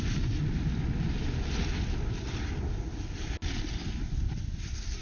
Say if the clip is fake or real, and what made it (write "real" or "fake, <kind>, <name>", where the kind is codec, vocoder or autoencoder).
real